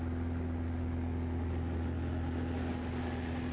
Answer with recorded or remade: recorded